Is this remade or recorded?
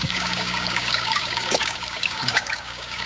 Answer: remade